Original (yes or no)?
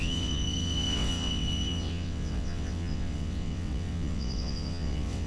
no